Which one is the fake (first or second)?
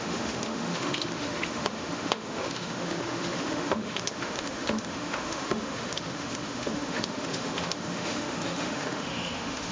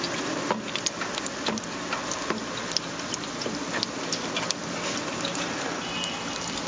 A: first